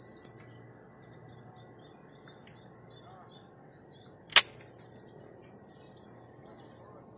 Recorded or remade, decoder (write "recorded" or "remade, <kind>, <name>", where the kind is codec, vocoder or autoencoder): recorded